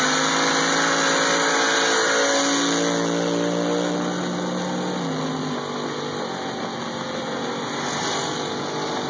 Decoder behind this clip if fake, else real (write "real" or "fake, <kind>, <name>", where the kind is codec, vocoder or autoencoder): real